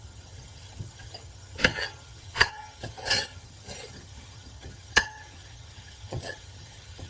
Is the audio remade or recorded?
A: remade